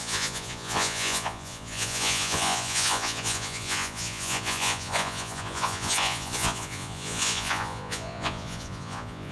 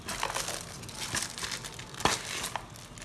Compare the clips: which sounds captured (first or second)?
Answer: second